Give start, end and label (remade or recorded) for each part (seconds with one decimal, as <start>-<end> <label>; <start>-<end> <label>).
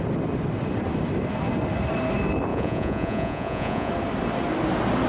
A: 0.0-2.5 recorded; 2.5-3.9 remade; 3.9-5.1 recorded